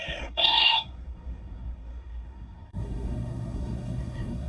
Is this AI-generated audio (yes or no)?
yes